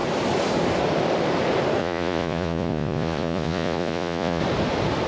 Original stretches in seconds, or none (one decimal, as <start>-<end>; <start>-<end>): 0.0-1.8; 4.4-5.1